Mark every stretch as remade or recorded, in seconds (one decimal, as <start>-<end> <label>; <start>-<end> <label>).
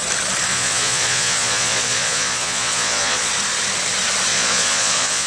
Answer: 0.0-0.5 recorded; 0.5-3.3 remade; 3.3-4.3 recorded; 4.3-5.3 remade